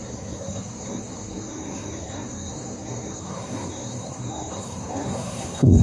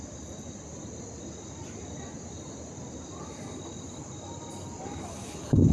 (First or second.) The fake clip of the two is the first